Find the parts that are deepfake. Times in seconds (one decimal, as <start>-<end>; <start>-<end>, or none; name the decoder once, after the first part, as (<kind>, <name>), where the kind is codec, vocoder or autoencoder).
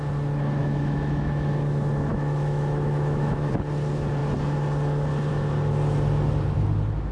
0.6-1.5 (autoencoder, DAC-VAE); 2.1-3.5